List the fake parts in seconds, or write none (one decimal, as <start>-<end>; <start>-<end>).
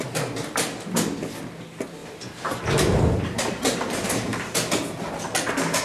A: 2.0-2.6